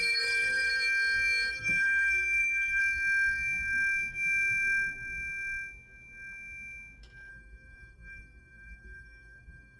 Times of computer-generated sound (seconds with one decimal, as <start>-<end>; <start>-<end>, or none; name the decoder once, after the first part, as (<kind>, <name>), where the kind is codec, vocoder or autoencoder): 0.0-0.7 (codec, SNAC); 1.5-2.8; 7.3-9.8